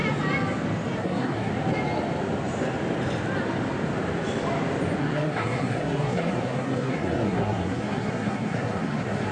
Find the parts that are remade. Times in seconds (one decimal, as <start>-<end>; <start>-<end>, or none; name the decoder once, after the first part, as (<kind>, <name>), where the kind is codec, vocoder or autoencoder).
1.0-1.5 (codec, SNAC); 5.0-9.3